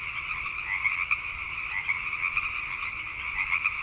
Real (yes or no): yes